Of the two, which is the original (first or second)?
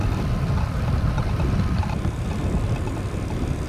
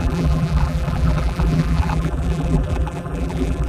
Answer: first